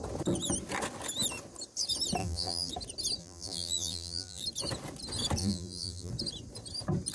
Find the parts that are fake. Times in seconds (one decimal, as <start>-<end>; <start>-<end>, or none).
2.2-2.7; 3.2-4.4; 5.4-6.1